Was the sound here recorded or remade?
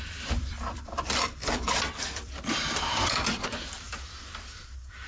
remade